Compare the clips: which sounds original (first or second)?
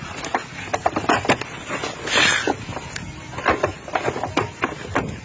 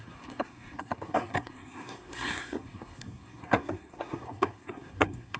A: first